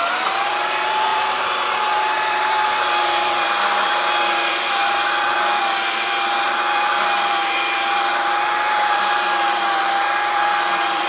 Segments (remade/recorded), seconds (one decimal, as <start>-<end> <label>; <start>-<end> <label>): 0.0-11.1 remade